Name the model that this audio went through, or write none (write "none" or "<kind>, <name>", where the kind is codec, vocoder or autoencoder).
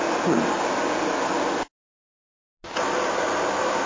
none